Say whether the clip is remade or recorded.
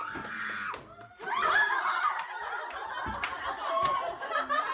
recorded